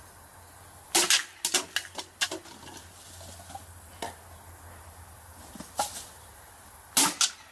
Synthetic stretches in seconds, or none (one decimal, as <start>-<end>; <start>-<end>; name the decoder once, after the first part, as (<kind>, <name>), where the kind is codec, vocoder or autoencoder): none